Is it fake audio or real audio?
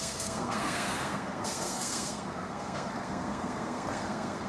fake